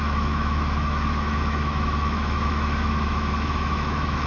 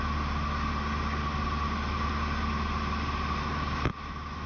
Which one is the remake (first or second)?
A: first